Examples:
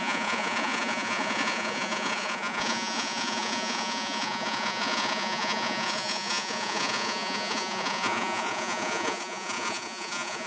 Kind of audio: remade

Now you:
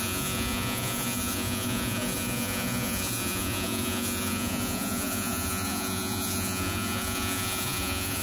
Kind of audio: remade